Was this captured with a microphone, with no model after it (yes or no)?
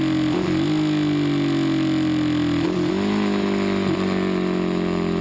yes